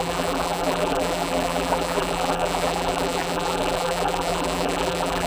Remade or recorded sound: remade